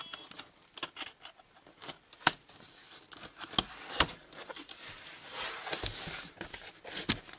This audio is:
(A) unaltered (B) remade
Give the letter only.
A